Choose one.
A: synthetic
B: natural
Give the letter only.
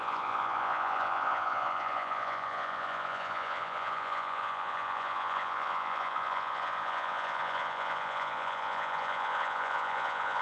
A